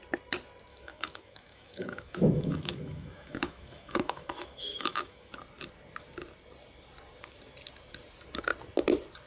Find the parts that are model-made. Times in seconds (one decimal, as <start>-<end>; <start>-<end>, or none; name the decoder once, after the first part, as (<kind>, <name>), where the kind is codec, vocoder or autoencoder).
0.7-5.3 (autoencoder, DAC-VAE)